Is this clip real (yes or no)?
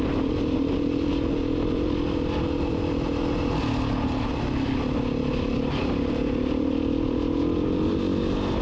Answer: yes